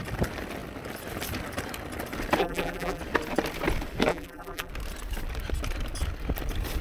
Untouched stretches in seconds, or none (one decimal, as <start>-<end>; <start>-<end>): 0.0-2.4; 3.0-4.1; 4.7-6.8